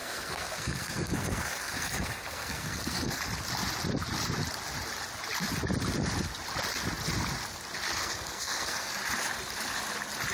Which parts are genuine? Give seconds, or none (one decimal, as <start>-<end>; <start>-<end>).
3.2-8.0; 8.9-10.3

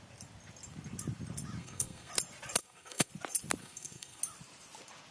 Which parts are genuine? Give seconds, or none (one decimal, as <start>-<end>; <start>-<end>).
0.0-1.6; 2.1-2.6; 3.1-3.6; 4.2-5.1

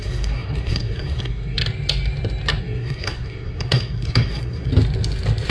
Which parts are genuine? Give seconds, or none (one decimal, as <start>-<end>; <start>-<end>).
1.6-2.6; 4.7-5.5

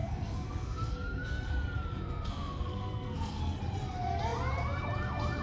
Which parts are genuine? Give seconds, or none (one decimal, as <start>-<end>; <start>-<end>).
1.5-1.9; 3.6-5.4